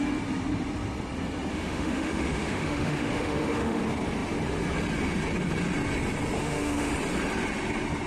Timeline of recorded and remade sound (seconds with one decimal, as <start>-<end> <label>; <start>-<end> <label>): 0.0-1.5 recorded; 1.5-3.8 remade; 3.8-6.4 recorded; 6.4-6.9 remade; 6.9-8.1 recorded